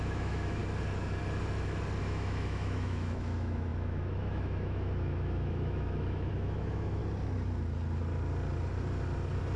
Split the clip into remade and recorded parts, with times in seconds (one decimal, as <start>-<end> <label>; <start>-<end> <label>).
0.0-0.6 remade; 0.6-2.0 recorded; 2.0-7.0 remade; 7.0-9.6 recorded